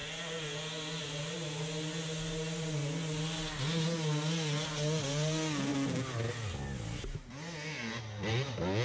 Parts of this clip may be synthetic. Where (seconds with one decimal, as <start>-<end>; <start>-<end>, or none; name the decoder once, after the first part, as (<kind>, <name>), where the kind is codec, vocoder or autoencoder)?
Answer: none